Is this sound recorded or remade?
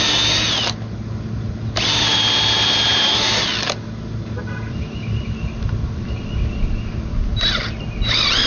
recorded